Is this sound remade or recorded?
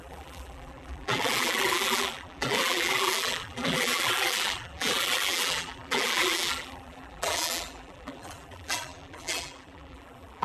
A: remade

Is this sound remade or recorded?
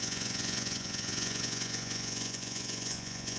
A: remade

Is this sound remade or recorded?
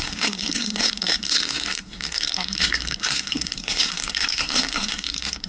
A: remade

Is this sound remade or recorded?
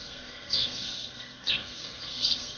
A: remade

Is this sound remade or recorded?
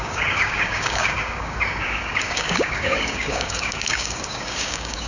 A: remade